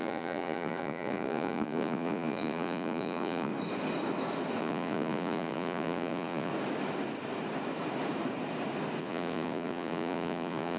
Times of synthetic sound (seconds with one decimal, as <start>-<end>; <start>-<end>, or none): 0.0-3.5; 4.6-6.5; 9.0-10.8